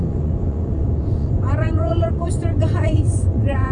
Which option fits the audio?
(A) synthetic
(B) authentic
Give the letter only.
A